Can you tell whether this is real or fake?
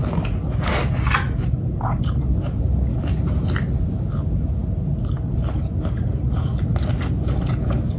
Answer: real